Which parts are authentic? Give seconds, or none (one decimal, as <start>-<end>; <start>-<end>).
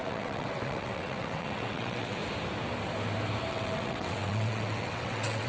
2.2-3.5